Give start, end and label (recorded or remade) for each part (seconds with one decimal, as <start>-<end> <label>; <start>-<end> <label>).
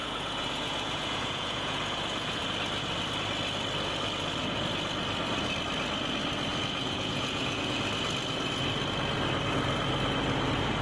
0.0-2.4 remade; 2.4-6.5 recorded; 6.5-7.8 remade; 7.8-10.8 recorded